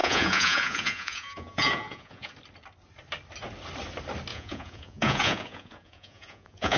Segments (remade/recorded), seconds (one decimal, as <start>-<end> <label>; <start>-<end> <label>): 0.0-2.3 remade; 2.3-4.3 recorded; 4.3-6.8 remade